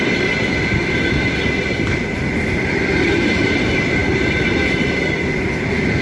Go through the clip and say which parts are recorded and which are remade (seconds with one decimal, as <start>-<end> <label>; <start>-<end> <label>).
0.0-6.0 recorded